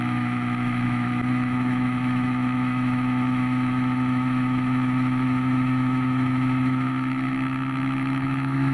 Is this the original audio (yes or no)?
no